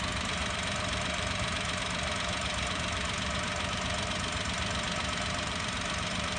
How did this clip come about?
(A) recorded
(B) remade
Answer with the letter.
B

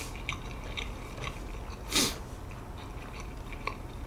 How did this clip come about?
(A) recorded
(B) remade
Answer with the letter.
A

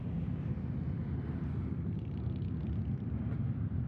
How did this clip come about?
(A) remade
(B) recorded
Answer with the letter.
B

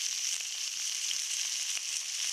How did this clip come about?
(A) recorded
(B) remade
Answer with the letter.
A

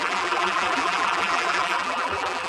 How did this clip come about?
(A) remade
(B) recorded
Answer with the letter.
A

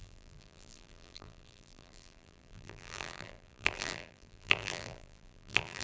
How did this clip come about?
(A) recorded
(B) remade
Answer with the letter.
B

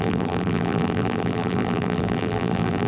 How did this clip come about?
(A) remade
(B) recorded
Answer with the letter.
A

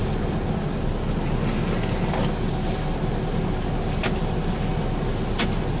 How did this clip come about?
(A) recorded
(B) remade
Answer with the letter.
A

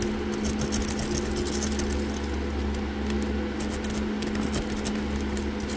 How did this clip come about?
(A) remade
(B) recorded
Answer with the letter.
B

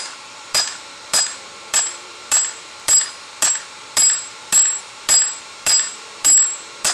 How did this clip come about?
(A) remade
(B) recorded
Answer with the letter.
A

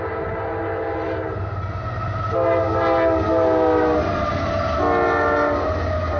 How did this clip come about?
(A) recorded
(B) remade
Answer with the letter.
A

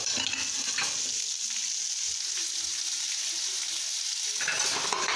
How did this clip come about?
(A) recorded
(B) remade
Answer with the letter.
A